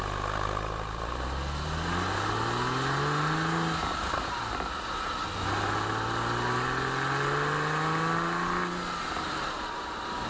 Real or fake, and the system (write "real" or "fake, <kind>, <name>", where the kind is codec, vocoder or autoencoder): real